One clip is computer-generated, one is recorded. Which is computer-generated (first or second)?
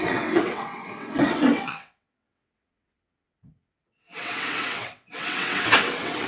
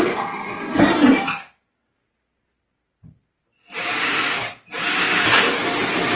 first